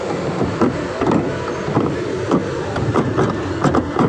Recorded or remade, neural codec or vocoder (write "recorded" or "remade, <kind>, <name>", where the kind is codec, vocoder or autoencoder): recorded